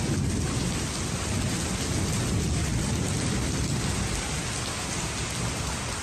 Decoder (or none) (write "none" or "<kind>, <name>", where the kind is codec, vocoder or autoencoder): none